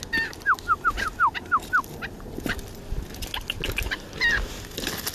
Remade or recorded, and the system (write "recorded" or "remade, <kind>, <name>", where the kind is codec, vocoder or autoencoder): recorded